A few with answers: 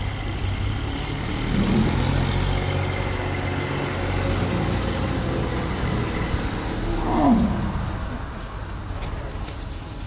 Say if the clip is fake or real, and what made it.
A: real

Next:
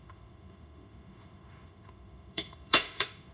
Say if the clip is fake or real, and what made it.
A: fake, autoencoder, DAC-VAE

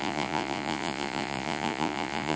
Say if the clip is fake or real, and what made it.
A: fake, vocoder, Vocos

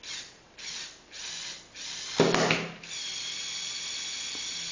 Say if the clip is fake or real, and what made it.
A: real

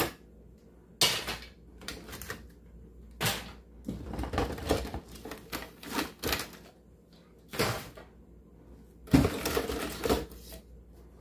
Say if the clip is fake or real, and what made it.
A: real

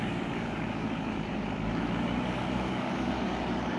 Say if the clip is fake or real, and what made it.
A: fake, codec, DAC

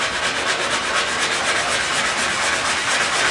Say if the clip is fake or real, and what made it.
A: real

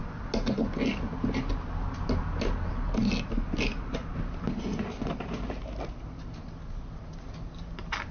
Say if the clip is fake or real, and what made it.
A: real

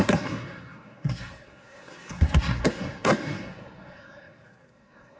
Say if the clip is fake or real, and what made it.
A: fake, codec, SNAC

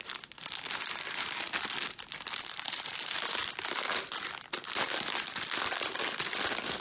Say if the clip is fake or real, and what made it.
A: real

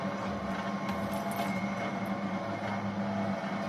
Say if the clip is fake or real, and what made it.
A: real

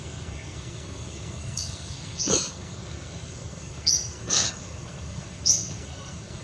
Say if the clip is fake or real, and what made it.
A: fake, codec, SNAC